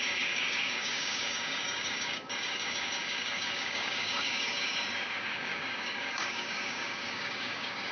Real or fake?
fake